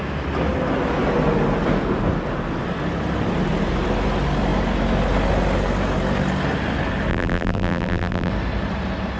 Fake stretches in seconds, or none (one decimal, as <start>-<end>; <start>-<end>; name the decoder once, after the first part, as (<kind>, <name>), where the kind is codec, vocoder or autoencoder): 7.1-8.3 (vocoder, BigVGAN v2)